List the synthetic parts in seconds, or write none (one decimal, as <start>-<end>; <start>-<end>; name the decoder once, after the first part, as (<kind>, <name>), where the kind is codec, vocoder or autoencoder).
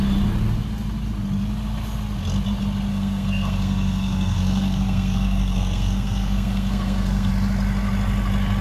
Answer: 2.9-7.3 (codec, SNAC)